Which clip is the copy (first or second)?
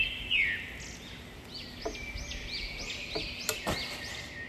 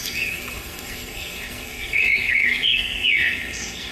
second